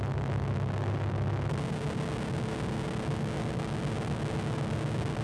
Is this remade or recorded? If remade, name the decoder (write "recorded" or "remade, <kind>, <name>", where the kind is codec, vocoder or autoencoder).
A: recorded